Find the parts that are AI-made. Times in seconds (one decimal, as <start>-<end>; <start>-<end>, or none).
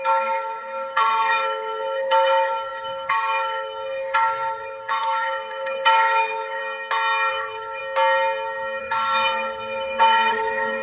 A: 0.0-6.6; 7.3-7.8; 8.8-10.8